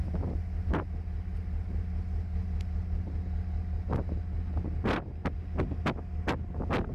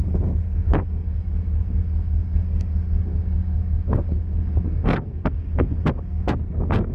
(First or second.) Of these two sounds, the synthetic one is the second